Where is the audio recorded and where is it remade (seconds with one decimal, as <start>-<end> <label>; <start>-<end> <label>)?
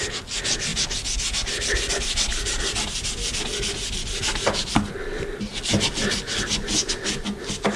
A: 0.0-7.8 recorded